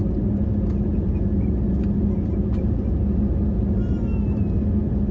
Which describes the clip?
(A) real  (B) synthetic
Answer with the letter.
A